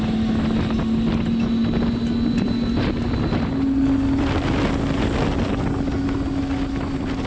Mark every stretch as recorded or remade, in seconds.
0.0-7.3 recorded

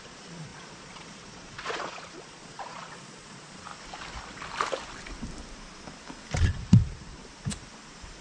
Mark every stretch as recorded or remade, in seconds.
0.0-3.7 remade; 3.7-6.4 recorded; 6.4-7.2 remade; 7.2-8.2 recorded

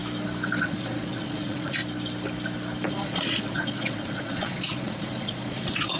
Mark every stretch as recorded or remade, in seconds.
0.0-0.6 recorded; 0.6-1.8 remade; 1.8-2.9 recorded; 2.9-6.0 remade

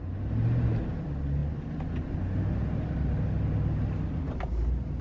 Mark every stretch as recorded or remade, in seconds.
0.0-5.0 recorded

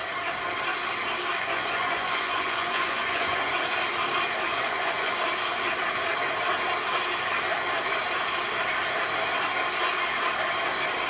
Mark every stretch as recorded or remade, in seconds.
0.0-1.4 recorded; 1.4-3.5 remade; 3.5-4.5 recorded; 4.5-5.1 remade; 5.1-11.1 recorded